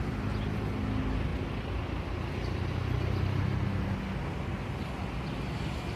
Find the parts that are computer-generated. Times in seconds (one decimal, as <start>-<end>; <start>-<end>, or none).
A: none